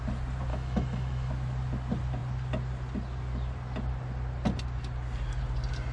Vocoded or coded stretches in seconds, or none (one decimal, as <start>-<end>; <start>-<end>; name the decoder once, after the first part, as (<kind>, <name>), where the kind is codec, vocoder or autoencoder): 0.5-1.3 (autoencoder, DAC-VAE)